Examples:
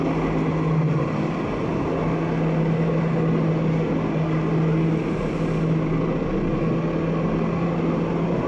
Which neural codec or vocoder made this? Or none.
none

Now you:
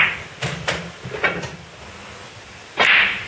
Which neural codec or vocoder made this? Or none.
none